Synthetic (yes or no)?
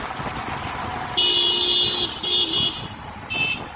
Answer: no